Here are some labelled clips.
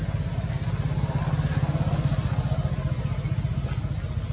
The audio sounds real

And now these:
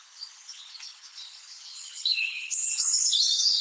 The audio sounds fake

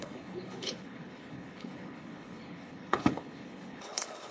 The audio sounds fake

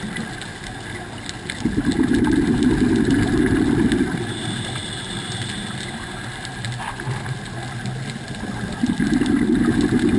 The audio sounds real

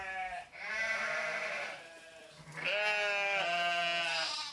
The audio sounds real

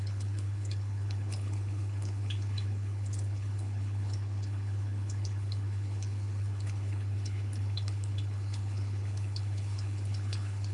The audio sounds fake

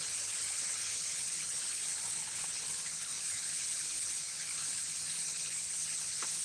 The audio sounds fake